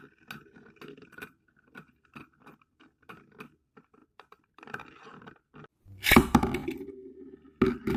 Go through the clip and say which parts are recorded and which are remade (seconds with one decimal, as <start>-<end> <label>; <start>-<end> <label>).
0.0-4.0 recorded; 4.0-5.3 remade; 5.3-6.6 recorded; 6.6-7.1 remade; 7.1-8.0 recorded